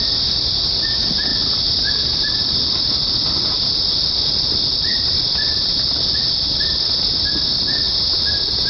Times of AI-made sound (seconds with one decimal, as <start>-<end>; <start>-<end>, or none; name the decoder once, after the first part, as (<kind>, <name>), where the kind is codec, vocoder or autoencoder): none